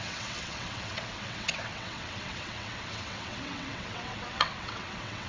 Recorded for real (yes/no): no